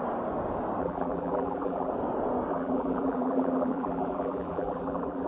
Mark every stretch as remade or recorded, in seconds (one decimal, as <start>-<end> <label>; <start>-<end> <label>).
0.0-0.8 recorded; 0.8-1.9 remade; 1.9-2.5 recorded; 2.5-5.3 remade